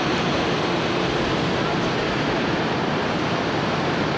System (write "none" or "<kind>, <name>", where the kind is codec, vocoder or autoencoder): none